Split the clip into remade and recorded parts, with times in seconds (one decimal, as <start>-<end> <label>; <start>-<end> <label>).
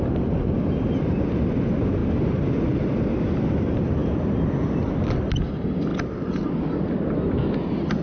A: 0.0-8.0 recorded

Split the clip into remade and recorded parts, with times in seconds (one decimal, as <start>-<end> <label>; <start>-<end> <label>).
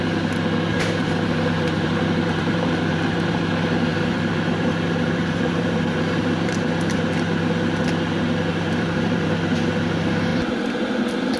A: 0.0-0.7 recorded; 0.7-3.4 remade; 3.4-3.9 recorded; 3.9-6.7 remade; 6.7-8.5 recorded; 8.5-9.3 remade; 9.3-10.3 recorded; 10.3-10.9 remade; 10.9-11.4 recorded